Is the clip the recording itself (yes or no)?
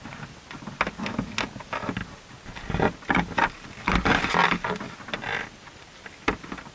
yes